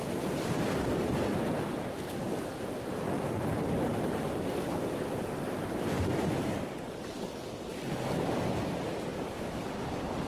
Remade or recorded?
recorded